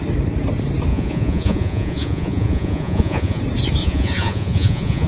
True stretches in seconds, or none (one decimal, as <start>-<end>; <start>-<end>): 0.0-0.9; 3.4-3.8